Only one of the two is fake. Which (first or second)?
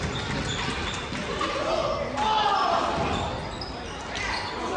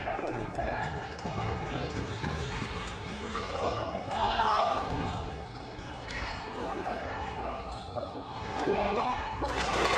second